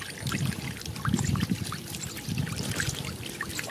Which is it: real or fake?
real